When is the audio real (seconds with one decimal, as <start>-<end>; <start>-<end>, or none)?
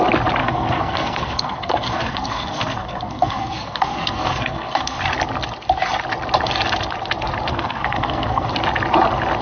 0.0-0.4; 5.0-7.5; 8.5-9.4